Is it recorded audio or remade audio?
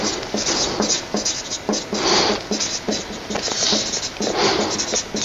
recorded